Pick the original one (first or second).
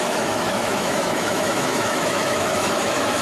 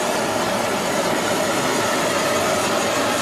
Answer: second